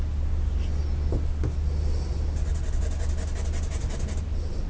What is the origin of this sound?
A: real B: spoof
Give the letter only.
A